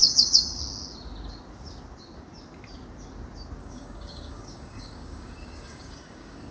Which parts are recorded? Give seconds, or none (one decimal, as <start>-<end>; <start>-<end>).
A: 0.6-3.6